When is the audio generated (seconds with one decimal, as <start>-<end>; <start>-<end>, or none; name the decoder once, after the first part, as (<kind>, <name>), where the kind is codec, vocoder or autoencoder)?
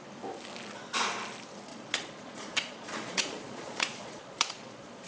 1.7-5.1 (vocoder, Vocos)